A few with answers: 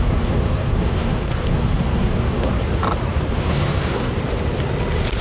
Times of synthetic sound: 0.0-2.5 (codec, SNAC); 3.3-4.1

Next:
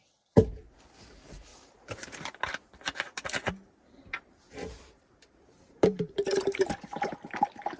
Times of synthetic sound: 1.5-2.5 (vocoder, BigVGAN v2); 4.6-6.7

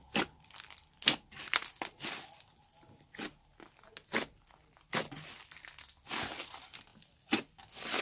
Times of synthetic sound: none

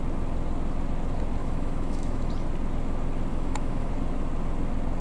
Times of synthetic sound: 1.4-2.3 (autoencoder, DAC-VAE); 3.3-3.9

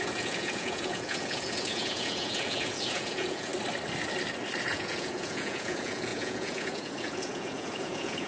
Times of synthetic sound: 0.0-3.5 (vocoder, Vocos); 4.6-8.3